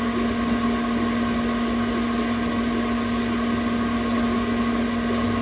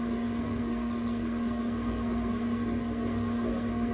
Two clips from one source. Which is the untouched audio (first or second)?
first